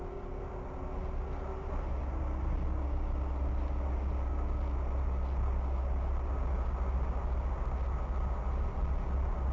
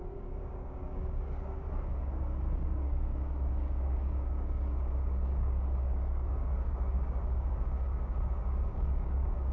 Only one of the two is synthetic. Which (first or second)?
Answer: second